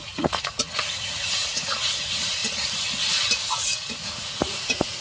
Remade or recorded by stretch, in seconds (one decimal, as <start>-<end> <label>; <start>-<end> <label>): 0.0-2.4 remade; 2.4-3.4 recorded; 3.4-5.0 remade